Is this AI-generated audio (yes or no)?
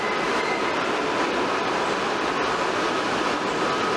no